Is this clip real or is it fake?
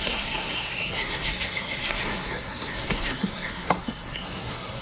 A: fake